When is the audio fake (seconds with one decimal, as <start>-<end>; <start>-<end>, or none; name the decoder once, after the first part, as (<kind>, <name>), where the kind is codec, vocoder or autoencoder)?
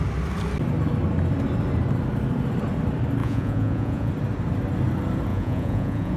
3.2-4.1 (vocoder, Vocos); 5.3-6.2